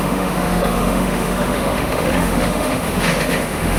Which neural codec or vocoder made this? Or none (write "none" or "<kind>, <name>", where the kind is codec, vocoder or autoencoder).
autoencoder, DAC-VAE